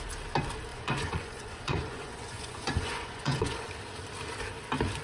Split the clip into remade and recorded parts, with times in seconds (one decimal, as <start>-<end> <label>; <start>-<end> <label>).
0.0-0.7 recorded; 0.7-3.7 remade; 3.7-5.0 recorded